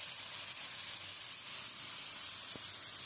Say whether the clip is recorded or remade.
recorded